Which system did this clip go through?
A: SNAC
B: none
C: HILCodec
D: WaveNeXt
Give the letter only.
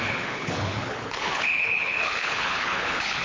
C